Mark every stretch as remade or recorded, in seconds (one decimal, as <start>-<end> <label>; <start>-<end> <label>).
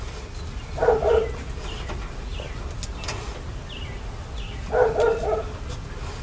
0.0-6.2 recorded